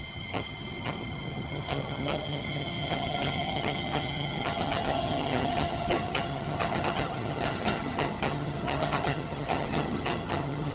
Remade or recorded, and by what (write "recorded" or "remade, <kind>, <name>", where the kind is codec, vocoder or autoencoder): remade, vocoder, HiFi-GAN